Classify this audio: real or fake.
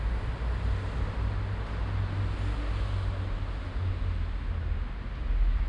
real